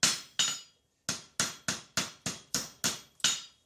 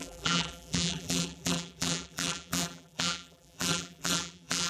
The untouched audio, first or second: first